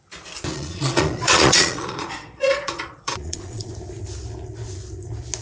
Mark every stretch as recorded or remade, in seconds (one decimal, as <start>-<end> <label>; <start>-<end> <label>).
0.0-0.5 recorded; 0.5-3.7 remade; 3.7-5.4 recorded